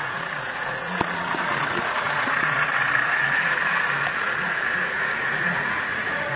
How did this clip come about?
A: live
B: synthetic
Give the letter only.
B